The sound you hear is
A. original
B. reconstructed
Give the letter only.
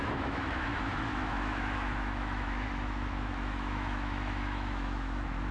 B